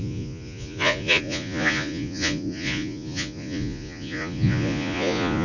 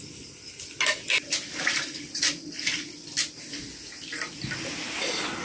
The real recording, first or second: second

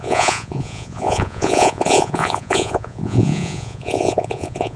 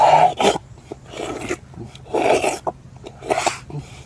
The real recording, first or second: second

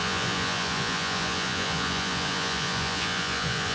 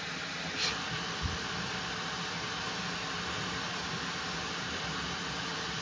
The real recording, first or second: second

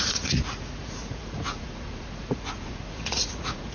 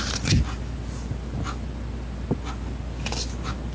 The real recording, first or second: second